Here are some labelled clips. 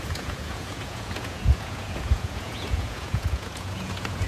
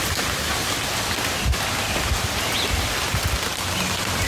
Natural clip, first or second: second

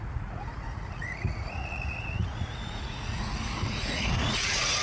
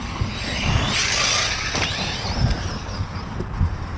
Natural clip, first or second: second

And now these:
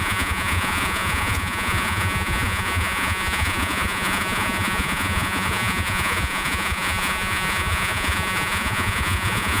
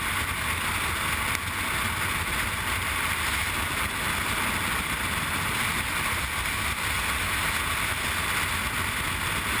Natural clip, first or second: second